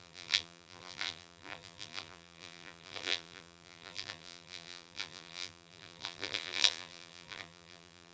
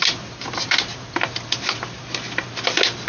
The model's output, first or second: first